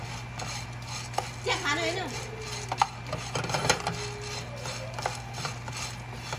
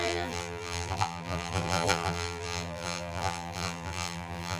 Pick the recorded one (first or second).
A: first